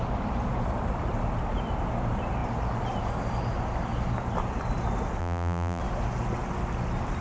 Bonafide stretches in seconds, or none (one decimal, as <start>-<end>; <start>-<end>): 0.0-5.2; 5.8-7.2